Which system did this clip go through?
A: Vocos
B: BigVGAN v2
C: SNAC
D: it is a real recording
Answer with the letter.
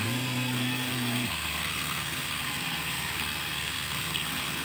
C